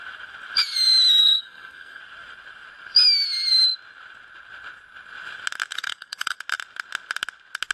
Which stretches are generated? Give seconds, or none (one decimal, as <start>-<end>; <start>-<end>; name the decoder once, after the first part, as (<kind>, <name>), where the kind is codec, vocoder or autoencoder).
1.2-2.0 (codec, SNAC); 5.7-6.4